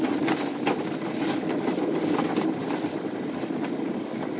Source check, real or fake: real